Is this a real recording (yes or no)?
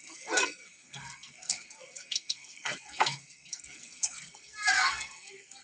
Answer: no